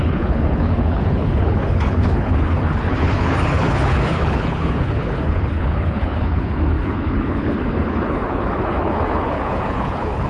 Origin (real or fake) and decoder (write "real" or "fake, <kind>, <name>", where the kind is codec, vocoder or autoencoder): fake, codec, HILCodec